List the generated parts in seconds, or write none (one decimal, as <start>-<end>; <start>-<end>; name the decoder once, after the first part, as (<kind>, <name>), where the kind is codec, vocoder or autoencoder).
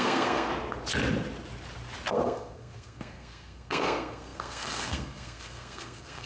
0.0-0.5 (codec, SNAC); 2.1-6.3